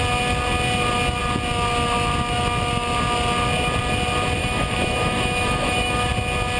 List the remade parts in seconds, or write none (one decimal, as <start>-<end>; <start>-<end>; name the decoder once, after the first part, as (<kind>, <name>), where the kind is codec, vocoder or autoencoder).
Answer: 4.4-6.1 (autoencoder, DAC-VAE)